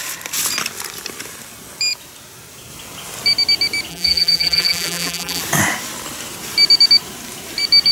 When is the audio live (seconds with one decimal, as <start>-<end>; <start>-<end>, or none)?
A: 0.0-3.9; 5.4-7.9